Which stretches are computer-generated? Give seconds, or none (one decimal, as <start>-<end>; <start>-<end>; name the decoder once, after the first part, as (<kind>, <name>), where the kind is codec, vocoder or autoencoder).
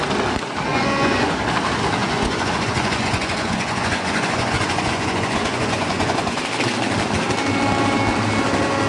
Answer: 0.7-1.4 (vocoder, Vocos); 2.0-6.4